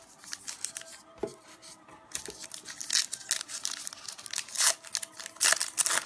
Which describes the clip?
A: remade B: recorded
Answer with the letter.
B